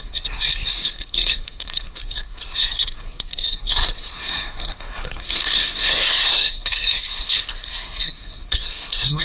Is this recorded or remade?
remade